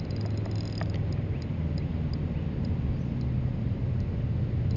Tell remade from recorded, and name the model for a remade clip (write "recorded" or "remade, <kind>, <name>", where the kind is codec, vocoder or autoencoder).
recorded